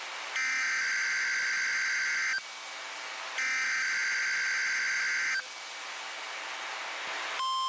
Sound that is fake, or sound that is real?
real